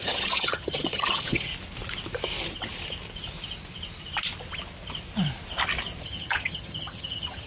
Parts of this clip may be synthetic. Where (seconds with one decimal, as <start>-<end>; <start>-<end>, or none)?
0.0-1.5; 6.0-7.5